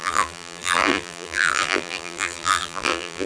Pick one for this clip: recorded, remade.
remade